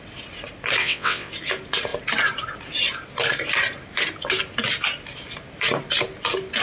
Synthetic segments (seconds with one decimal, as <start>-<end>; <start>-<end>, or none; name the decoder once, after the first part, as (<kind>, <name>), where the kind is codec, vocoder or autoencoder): 0.8-1.3 (vocoder, WaveNeXt)